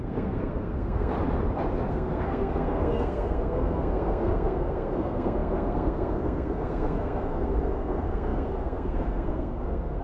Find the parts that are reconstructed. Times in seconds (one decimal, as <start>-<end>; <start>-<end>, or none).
0.0-1.1; 1.9-10.0